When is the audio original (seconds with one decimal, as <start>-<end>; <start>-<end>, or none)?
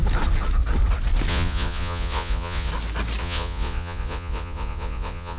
0.0-1.3; 2.7-3.2